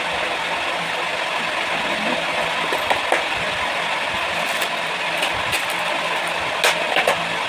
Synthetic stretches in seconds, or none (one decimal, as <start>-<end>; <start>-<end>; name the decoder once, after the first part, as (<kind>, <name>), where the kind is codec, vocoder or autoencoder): none